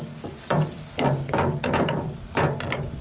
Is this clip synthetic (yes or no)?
no